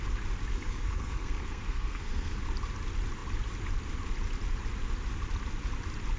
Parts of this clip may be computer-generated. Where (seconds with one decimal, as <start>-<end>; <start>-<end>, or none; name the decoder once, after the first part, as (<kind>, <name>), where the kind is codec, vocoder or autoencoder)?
0.5-2.4 (codec, SNAC)